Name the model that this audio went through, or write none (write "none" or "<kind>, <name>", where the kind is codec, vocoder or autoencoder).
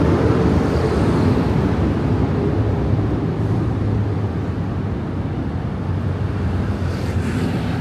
none